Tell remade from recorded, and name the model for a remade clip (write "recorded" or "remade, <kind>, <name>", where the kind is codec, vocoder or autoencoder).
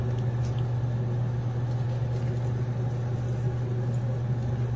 recorded